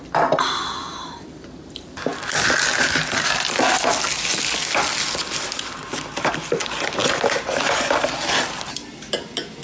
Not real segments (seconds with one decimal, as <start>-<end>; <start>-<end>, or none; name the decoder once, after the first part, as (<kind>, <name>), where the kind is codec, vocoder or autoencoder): none